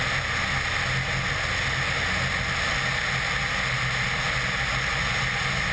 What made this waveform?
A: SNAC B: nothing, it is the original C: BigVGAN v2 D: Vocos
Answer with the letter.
B